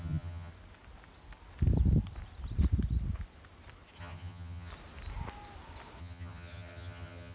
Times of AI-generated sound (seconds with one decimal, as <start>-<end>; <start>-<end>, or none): 0.0-0.5; 4.0-4.7; 6.0-7.3